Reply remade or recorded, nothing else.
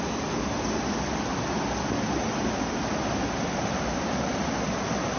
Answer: recorded